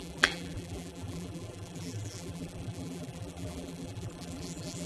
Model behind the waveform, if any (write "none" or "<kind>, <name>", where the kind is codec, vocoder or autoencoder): vocoder, BigVGAN v2